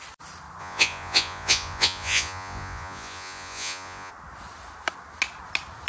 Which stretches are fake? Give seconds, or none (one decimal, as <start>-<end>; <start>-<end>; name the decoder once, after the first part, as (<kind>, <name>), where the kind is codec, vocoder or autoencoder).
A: 0.6-4.1 (vocoder, Vocos)